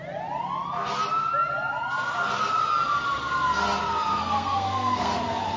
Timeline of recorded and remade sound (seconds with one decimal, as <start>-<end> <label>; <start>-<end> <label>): 0.0-4.1 recorded; 4.1-5.1 remade; 5.1-5.6 recorded